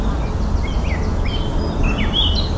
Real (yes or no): yes